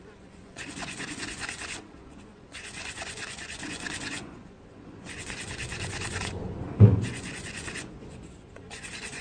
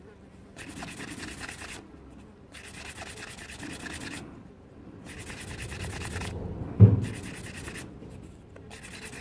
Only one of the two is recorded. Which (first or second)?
second